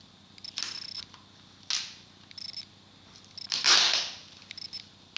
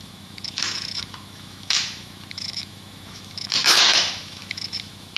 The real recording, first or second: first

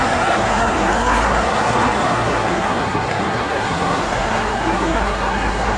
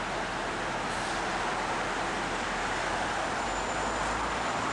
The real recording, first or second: second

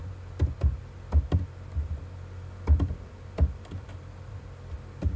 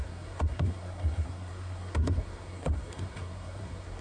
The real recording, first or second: first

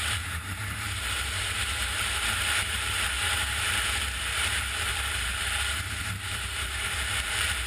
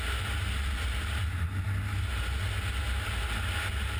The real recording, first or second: second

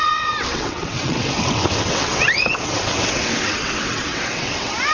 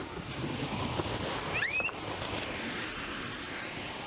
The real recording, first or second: second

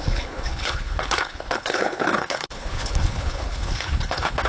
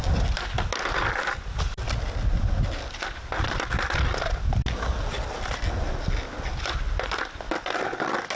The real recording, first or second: second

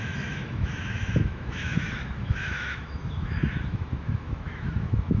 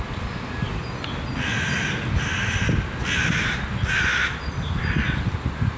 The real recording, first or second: second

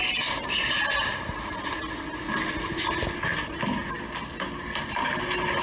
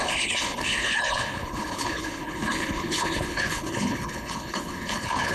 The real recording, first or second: first